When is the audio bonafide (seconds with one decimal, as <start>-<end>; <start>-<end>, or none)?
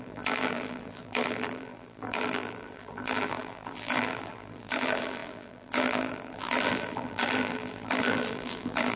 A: none